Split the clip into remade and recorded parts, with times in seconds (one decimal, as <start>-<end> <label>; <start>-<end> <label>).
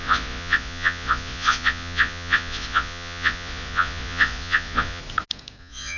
0.0-5.0 remade; 5.0-5.6 recorded; 5.6-6.0 remade